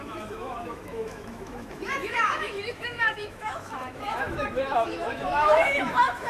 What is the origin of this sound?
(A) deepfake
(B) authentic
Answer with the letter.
A